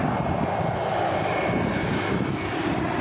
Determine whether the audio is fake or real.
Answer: real